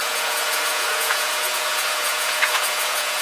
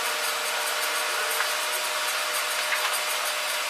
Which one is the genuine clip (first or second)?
second